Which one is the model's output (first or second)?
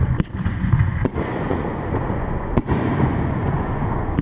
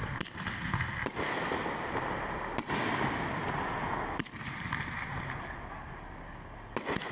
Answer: first